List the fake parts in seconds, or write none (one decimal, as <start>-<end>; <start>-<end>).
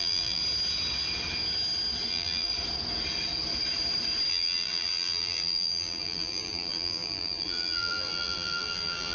0.0-0.4; 2.1-2.5; 4.3-9.1